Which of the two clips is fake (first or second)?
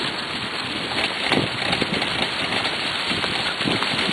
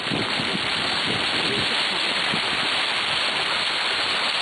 first